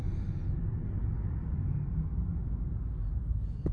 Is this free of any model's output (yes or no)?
yes